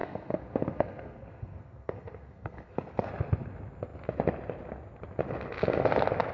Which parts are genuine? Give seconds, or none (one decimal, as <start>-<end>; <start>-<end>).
3.1-6.3